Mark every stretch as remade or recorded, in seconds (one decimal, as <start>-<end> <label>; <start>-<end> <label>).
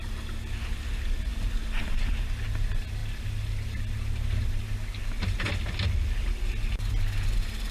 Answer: 0.0-7.7 recorded